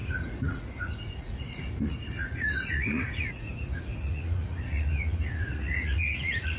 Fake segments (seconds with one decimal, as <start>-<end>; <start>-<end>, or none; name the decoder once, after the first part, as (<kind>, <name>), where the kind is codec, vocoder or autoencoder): 0.0-6.6 (vocoder, Vocos)